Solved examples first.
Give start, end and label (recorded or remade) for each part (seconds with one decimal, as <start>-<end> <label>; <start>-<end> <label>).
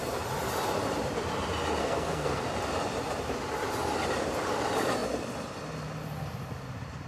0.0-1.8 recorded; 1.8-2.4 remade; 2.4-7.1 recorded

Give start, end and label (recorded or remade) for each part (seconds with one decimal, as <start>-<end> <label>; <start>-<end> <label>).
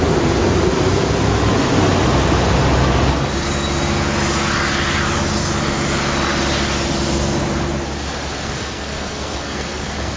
0.0-8.3 recorded; 8.3-10.2 remade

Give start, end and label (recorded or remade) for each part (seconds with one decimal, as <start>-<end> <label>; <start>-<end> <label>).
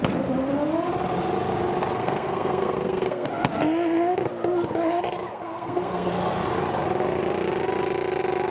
0.0-2.0 recorded; 2.0-3.3 remade; 3.3-5.3 recorded; 5.3-6.1 remade; 6.1-8.5 recorded